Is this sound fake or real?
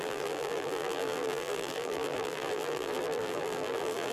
fake